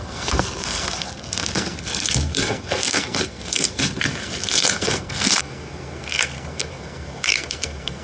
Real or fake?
fake